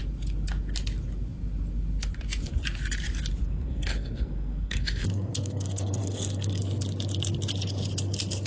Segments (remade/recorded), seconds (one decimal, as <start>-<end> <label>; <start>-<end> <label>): 0.0-3.4 recorded; 3.4-6.6 remade; 6.6-8.5 recorded